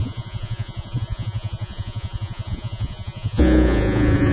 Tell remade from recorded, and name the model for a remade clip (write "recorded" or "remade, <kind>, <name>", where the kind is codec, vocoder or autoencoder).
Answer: remade, vocoder, Vocos